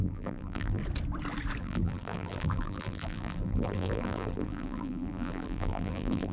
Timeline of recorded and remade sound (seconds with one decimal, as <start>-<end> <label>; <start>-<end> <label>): 0.0-0.8 remade; 0.8-1.6 recorded; 1.6-6.3 remade

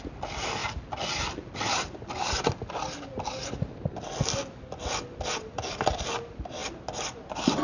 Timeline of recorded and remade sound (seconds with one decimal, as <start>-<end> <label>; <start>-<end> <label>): 0.0-7.6 recorded

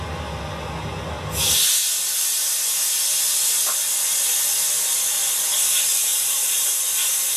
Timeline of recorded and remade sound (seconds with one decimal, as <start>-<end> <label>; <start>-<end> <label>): 0.0-6.1 recorded; 6.1-6.8 remade; 6.8-7.4 recorded

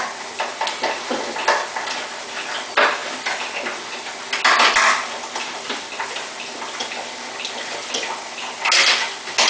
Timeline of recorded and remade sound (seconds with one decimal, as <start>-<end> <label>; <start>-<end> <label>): 0.0-9.5 recorded

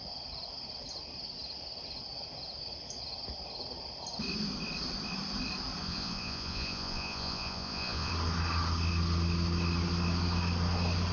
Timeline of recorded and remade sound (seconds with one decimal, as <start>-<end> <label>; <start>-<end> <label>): 0.0-5.8 recorded; 5.8-8.1 remade; 8.1-11.1 recorded

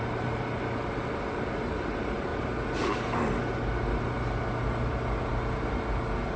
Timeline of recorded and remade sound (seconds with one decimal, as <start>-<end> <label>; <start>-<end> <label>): 0.0-2.3 remade; 2.3-6.4 recorded

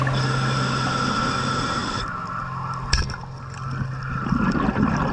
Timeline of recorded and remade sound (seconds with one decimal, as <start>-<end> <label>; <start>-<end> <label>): 0.0-5.1 recorded

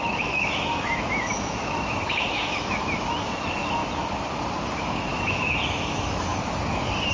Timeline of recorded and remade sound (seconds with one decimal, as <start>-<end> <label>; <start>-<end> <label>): 0.0-3.8 remade; 3.8-4.8 recorded; 4.8-6.3 remade; 6.3-7.1 recorded